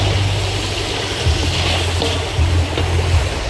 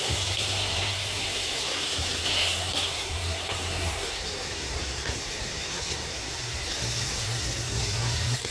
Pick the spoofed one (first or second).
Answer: second